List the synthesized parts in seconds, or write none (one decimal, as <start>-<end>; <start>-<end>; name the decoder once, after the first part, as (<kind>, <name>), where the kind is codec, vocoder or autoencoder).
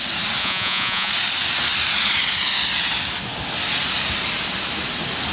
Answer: 0.4-1.1 (vocoder, Vocos)